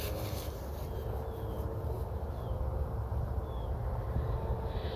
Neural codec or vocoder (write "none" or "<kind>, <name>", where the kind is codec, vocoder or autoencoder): none